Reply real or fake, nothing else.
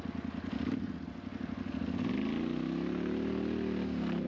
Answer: real